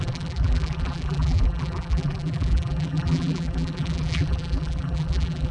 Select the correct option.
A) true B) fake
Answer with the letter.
B